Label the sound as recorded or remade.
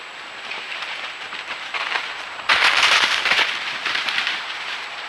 remade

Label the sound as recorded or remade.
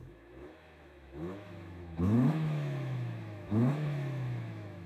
remade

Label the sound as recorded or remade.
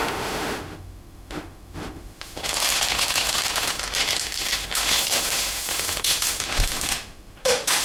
remade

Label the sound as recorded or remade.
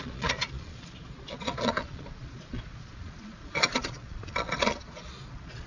remade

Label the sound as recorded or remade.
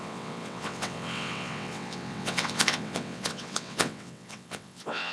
remade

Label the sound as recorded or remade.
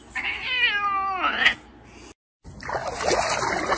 recorded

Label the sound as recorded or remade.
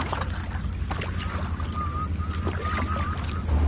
recorded